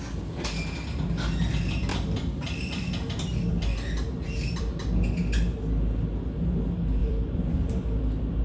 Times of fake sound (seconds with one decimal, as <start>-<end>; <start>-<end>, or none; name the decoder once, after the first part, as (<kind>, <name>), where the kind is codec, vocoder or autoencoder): 1.9-4.7 (vocoder, BigVGAN v2); 7.0-8.4

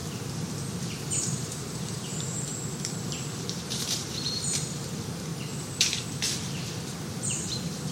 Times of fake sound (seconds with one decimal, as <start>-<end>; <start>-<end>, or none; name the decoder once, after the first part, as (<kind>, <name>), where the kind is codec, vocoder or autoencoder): 1.2-2.5 (vocoder, BigVGAN v2); 3.4-5.3; 6.2-7.9